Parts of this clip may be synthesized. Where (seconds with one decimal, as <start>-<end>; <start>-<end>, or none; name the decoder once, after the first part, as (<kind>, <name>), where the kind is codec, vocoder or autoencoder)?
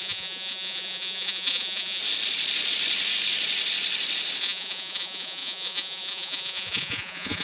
0.0-2.0 (vocoder, Vocos); 4.4-7.4